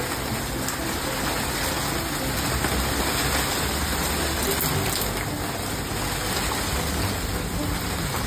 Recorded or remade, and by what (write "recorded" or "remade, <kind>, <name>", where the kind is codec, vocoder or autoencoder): recorded